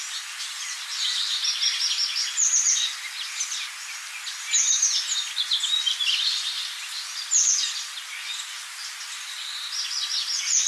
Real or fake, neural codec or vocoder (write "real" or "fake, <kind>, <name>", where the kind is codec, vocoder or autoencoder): real